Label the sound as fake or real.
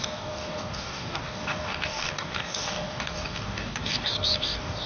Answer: fake